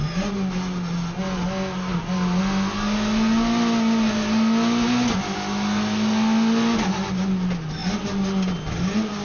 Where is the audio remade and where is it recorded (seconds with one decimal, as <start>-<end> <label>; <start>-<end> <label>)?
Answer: 0.0-9.2 recorded